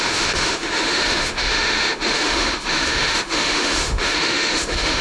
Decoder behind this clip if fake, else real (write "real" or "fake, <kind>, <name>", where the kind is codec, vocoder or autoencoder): fake, autoencoder, DAC-VAE